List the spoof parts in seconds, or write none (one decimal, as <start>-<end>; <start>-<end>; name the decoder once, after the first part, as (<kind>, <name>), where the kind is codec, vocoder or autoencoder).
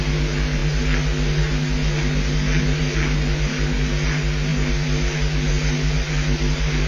none